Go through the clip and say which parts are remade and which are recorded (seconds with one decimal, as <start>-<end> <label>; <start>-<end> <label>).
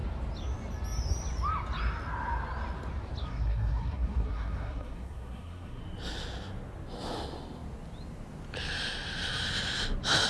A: 0.0-3.2 recorded; 3.2-5.8 remade; 5.8-10.3 recorded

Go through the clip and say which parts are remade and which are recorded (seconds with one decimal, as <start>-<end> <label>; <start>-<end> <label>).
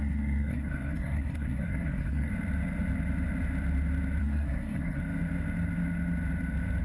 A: 0.0-2.3 remade; 2.3-4.2 recorded; 4.2-5.0 remade; 5.0-6.8 recorded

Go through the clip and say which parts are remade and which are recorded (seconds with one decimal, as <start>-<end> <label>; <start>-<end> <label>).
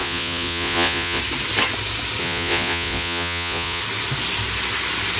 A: 0.0-1.2 remade; 1.2-2.2 recorded; 2.2-3.8 remade; 3.8-5.2 recorded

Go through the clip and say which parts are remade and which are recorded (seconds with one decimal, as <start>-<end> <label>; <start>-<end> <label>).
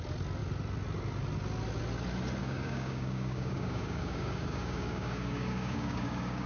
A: 0.0-2.4 recorded; 2.4-6.5 remade